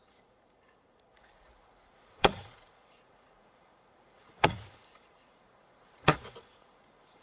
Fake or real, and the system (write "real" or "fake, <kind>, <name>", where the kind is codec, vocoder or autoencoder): fake, vocoder, Vocos